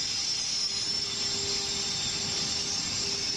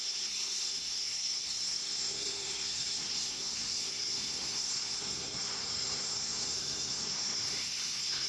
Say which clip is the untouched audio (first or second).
first